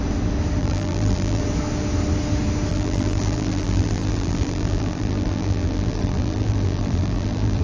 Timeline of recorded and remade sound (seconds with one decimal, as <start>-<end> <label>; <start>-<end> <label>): 0.0-0.6 recorded; 0.6-1.4 remade; 1.4-2.7 recorded; 2.7-7.6 remade